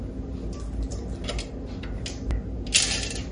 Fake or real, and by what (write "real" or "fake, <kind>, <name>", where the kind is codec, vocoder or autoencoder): real